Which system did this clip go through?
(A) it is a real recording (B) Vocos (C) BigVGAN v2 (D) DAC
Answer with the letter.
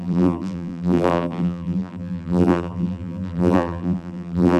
C